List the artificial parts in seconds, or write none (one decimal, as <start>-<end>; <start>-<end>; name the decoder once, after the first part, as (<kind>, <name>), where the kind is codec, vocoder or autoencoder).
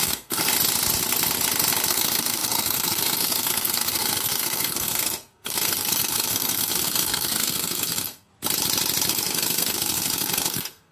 0.0-0.5 (codec, SNAC); 1.9-8.3; 9.1-10.9